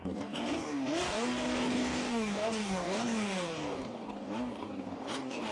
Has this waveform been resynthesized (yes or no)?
yes